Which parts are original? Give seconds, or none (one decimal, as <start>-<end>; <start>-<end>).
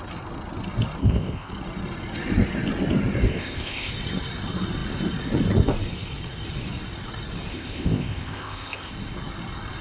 0.0-1.0; 1.5-3.3; 3.9-7.5; 8.9-9.8